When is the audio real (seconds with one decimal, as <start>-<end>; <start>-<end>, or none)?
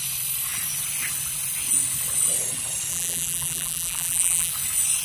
0.0-2.9; 4.5-5.0